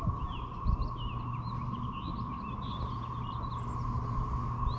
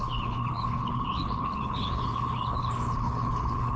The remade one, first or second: second